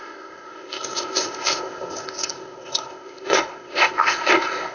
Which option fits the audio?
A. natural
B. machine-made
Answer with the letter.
B